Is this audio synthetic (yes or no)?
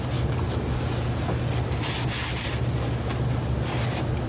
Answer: no